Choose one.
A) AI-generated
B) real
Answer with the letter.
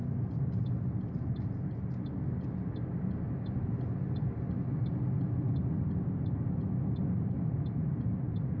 B